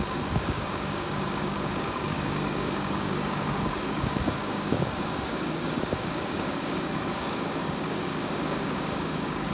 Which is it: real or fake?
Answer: fake